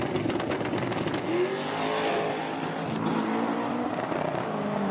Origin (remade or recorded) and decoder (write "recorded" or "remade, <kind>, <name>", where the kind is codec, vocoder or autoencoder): recorded